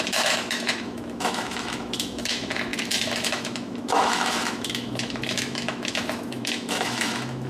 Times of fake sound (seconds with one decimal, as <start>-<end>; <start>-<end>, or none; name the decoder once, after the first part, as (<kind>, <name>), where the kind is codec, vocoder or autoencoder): 0.0-7.5 (autoencoder, DAC-VAE)